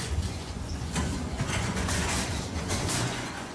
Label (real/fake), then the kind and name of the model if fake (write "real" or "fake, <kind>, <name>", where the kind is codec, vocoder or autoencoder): fake, vocoder, Vocos